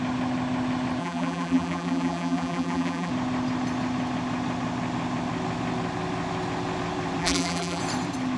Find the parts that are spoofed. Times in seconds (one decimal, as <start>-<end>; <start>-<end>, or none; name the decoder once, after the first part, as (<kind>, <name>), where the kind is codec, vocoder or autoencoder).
1.0-3.1 (vocoder, BigVGAN v2); 7.2-7.8